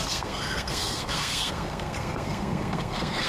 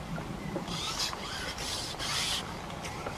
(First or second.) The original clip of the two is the second